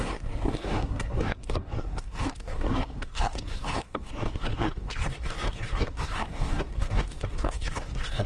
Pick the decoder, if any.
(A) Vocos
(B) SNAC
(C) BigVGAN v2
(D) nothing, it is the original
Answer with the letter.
B